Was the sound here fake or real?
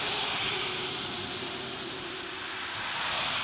real